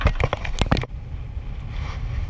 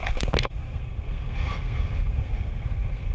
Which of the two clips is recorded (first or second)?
first